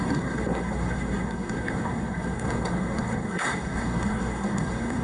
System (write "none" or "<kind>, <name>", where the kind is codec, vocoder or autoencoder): codec, SNAC